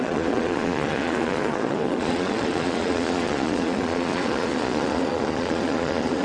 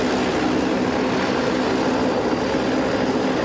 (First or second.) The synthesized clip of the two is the first